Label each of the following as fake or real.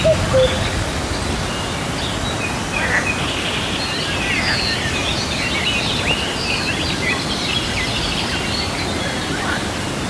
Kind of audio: real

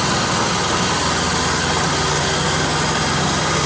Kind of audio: real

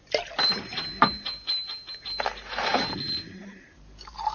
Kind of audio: real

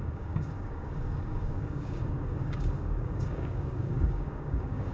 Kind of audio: fake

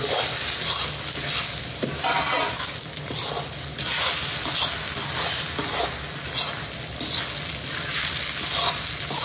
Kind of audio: real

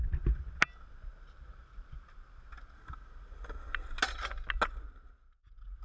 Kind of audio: real